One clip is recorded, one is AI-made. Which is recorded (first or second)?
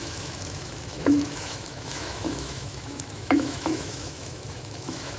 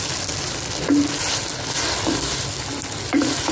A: second